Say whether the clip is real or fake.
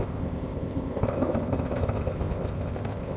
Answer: fake